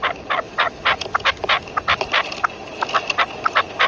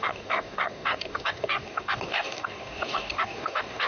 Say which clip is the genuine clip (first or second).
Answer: first